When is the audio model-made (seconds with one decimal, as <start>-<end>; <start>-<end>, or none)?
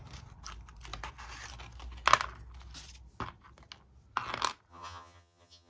4.7-5.7